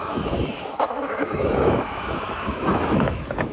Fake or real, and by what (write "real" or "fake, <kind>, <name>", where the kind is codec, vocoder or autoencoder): fake, autoencoder, DAC-VAE